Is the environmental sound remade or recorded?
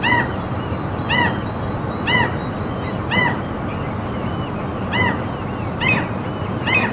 recorded